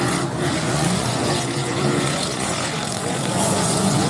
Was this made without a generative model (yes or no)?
no